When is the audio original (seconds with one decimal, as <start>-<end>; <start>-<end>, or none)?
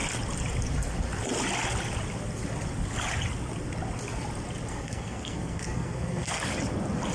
0.0-4.7; 6.4-7.1